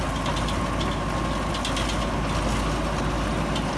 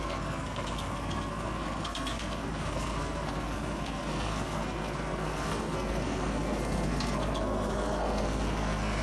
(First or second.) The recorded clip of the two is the first